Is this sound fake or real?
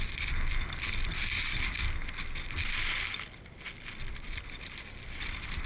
real